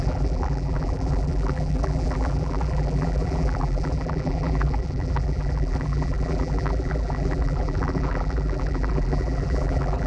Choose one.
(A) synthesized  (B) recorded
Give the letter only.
A